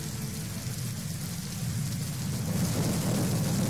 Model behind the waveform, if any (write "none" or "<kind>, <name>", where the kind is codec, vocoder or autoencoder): none